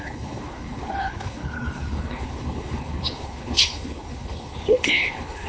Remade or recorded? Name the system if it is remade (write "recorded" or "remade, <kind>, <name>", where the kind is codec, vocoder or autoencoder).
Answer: remade, codec, HILCodec